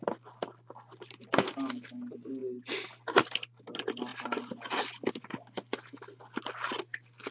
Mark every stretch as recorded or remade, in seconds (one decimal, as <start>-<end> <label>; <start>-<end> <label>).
0.0-7.3 recorded